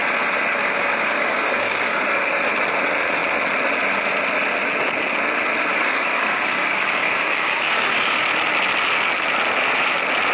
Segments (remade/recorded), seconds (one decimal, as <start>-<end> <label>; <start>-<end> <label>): 0.0-0.6 recorded; 0.6-2.0 remade; 2.0-5.7 recorded; 5.7-8.2 remade; 8.2-10.3 recorded

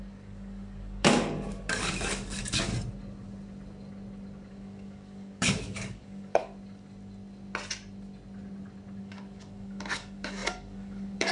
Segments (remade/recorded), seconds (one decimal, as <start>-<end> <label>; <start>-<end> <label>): 0.0-2.7 remade; 2.7-4.5 recorded; 4.5-6.5 remade; 6.5-9.0 recorded; 9.0-11.3 remade